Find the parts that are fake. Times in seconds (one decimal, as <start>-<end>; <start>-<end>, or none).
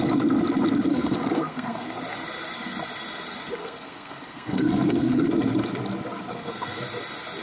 0.9-2.0; 3.6-5.3; 6.3-6.8